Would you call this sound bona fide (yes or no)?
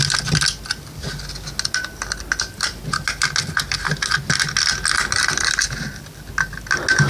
yes